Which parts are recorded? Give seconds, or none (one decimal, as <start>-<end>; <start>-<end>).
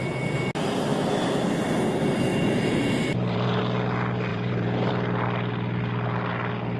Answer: 0.0-2.3; 3.6-4.3; 4.9-6.8